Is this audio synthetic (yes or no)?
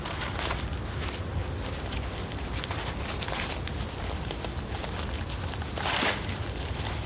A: no